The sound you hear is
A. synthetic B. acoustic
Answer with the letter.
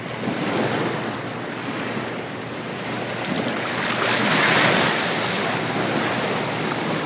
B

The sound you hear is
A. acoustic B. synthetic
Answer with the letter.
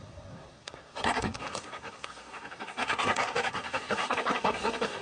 B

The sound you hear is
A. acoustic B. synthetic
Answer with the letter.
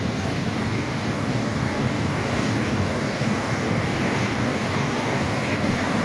B